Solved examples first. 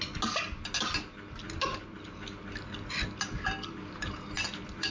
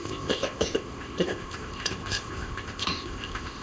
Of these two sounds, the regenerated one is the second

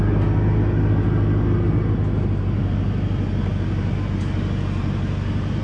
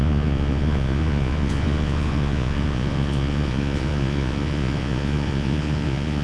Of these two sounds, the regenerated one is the second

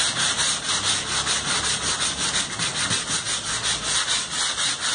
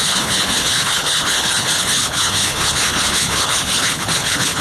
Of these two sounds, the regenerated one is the second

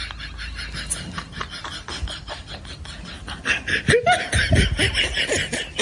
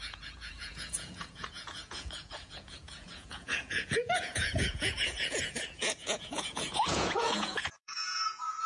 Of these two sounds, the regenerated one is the second